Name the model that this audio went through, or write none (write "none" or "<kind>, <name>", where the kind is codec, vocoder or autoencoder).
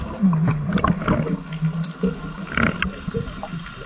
none